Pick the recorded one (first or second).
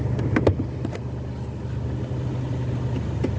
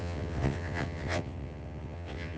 first